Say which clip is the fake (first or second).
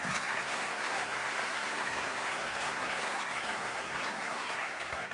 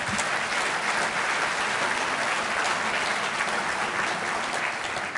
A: first